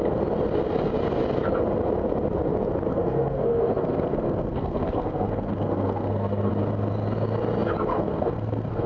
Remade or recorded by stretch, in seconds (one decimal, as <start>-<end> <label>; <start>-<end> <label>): 0.0-2.9 recorded; 2.9-6.5 remade; 6.5-7.9 recorded; 7.9-8.9 remade